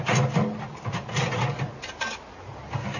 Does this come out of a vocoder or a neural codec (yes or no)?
no